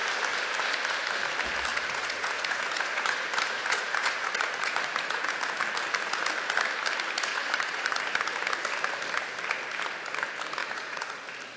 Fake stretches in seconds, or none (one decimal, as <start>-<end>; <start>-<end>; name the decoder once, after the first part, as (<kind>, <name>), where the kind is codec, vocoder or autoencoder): 1.7-5.4 (vocoder, Vocos); 7.3-8.0; 10.6-11.2